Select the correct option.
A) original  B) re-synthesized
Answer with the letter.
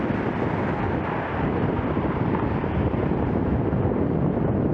A